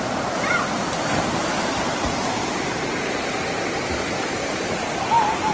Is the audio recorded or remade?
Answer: recorded